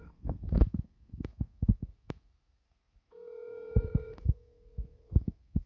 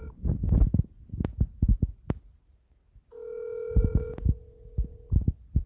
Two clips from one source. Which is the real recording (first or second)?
second